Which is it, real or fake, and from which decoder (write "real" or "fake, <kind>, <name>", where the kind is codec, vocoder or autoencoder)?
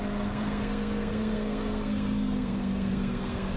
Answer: fake, codec, SNAC